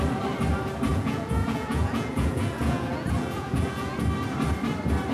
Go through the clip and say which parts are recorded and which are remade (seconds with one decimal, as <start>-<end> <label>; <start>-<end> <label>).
0.0-0.9 recorded; 0.9-4.0 remade; 4.0-5.1 recorded